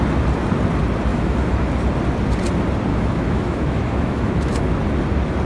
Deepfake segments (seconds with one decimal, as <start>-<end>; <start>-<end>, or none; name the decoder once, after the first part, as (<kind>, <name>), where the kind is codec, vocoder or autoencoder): 1.1-1.7 (autoencoder, DAC-VAE); 2.9-4.7